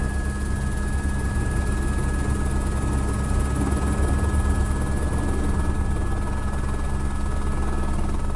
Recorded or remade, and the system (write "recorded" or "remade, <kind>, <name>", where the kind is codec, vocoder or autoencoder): recorded